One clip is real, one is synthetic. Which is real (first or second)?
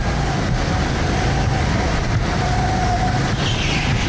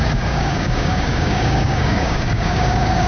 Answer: first